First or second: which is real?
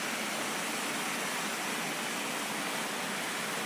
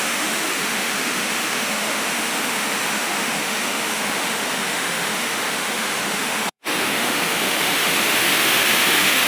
first